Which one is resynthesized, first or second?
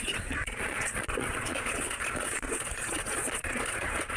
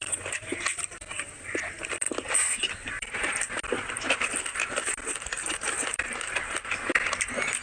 first